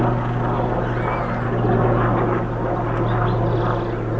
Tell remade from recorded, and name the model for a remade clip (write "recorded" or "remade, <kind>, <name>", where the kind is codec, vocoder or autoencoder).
recorded